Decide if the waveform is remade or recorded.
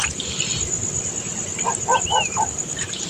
recorded